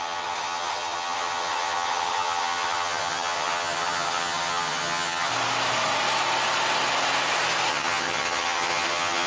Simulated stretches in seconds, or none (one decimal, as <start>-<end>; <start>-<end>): 0.0-5.3; 7.7-9.3